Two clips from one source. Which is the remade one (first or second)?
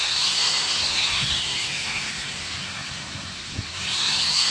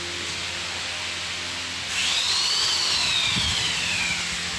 first